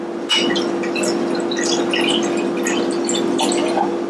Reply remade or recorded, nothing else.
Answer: recorded